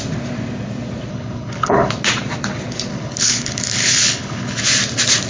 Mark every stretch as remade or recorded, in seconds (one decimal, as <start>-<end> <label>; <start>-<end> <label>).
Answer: 0.0-1.1 recorded; 1.1-1.9 remade; 1.9-2.9 recorded; 2.9-4.6 remade; 4.6-5.3 recorded